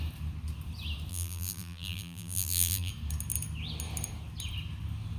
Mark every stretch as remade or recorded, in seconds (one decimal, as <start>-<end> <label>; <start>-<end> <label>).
0.0-1.1 recorded; 1.1-2.9 remade; 2.9-5.2 recorded